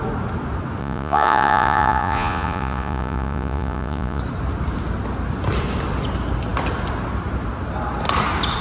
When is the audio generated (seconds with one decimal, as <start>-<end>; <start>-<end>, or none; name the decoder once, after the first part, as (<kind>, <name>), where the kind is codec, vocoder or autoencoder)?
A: 0.8-4.2 (vocoder, Vocos)